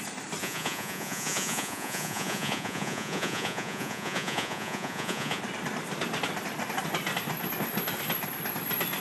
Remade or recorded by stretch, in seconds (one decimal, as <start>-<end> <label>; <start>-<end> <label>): 0.0-0.4 recorded; 0.4-5.4 remade; 5.4-9.0 recorded